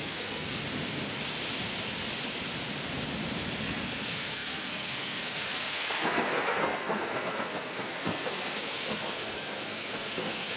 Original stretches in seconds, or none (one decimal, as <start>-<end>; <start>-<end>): 0.6-3.6